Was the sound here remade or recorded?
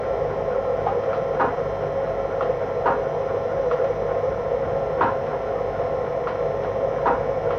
recorded